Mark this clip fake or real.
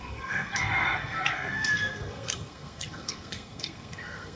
fake